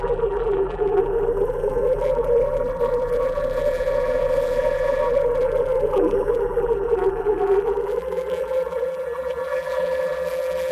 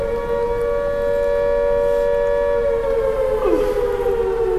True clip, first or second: second